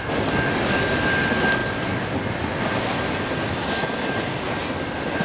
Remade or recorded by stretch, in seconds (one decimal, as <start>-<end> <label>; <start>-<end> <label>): 0.0-5.2 recorded